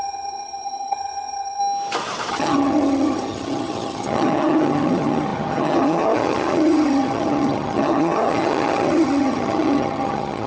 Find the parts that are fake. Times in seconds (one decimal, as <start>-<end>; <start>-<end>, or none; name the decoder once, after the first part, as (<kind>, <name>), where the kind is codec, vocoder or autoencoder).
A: 0.0-1.6 (vocoder, HiFi-GAN); 2.3-10.5